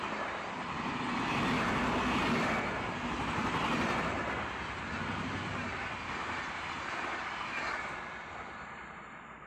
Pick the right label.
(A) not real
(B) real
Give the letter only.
B